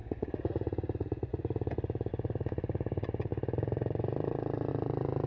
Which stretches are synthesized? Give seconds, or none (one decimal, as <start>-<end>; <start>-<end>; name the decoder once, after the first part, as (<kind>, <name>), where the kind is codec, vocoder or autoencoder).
0.0-5.3 (vocoder, Vocos)